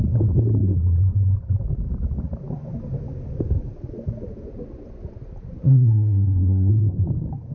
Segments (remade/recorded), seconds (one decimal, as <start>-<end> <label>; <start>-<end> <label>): 0.0-5.6 recorded; 5.6-6.7 remade; 6.7-7.5 recorded